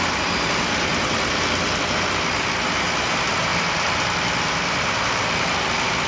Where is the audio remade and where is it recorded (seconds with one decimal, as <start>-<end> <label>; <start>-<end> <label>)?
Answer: 0.0-6.1 recorded